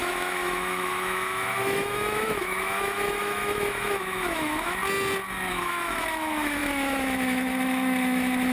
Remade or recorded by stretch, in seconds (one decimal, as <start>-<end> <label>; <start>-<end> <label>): 0.0-4.8 remade; 4.8-5.5 recorded; 5.5-8.5 remade